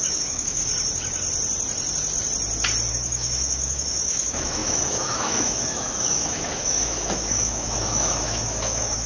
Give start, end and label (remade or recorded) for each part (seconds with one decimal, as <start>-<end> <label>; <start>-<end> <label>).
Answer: 0.0-0.6 remade; 0.6-2.9 recorded; 2.9-9.1 remade